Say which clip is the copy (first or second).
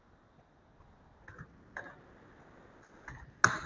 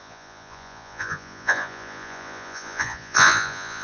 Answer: second